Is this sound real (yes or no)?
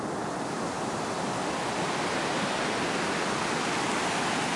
yes